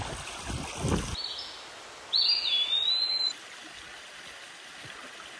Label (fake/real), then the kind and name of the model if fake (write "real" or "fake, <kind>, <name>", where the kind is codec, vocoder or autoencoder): real